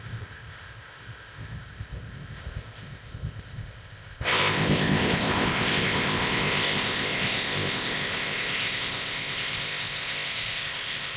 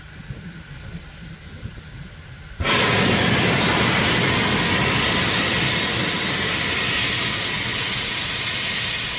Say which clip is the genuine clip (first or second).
second